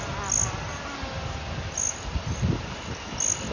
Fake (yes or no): no